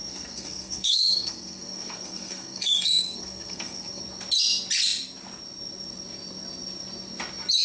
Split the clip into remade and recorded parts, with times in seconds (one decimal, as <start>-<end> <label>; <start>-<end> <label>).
0.0-4.0 remade; 4.0-7.6 recorded